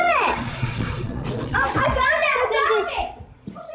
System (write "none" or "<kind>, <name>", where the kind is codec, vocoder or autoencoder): vocoder, Vocos